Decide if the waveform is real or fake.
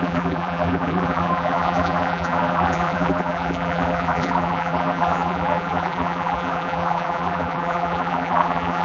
fake